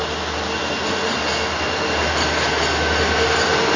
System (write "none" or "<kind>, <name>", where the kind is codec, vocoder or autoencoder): none